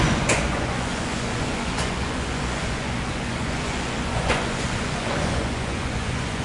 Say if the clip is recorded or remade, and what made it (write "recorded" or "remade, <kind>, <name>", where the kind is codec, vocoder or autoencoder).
remade, vocoder, Vocos